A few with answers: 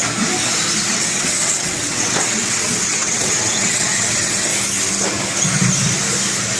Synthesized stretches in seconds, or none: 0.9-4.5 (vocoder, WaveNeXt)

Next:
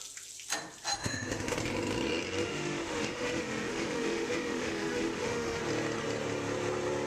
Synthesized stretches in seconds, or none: 1.0-1.6 (autoencoder, DAC-VAE); 2.4-5.6

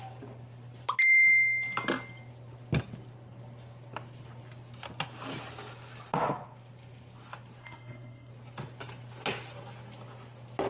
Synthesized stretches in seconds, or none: 7.6-8.3 (codec, SNAC)

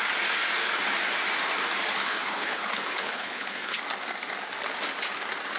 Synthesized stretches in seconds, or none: 2.0-3.8 (codec, HILCodec)

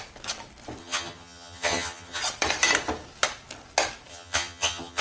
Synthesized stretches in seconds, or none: 0.8-2.2 (vocoder, HiFi-GAN); 4.1-5.0

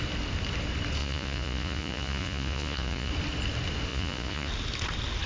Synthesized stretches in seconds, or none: 1.0-3.1 (vocoder, Vocos); 3.9-4.5

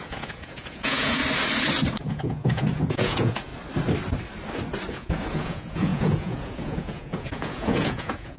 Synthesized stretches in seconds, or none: 0.0-1.2 (vocoder, Vocos); 1.9-3.5; 4.9-8.4

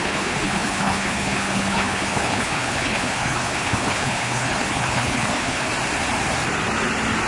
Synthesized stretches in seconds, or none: 0.0-5.7 (codec, HILCodec)